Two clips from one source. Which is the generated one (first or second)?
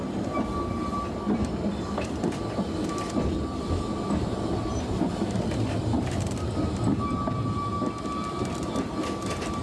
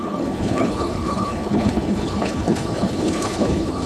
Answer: second